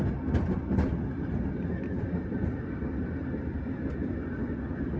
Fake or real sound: real